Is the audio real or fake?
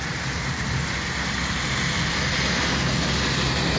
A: real